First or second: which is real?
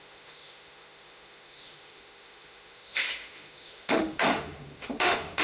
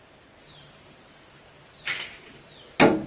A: second